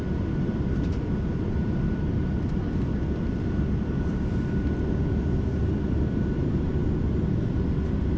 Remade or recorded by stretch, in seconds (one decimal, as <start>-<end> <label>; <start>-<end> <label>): 0.0-8.2 recorded